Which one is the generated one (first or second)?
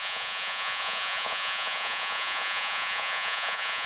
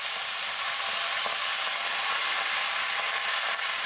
first